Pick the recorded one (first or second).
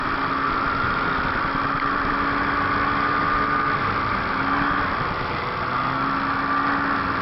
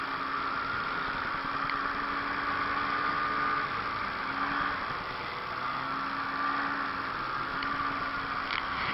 second